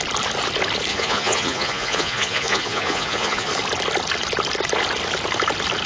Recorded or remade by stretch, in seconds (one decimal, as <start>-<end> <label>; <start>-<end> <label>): 0.0-0.9 recorded; 0.9-3.5 remade; 3.5-5.9 recorded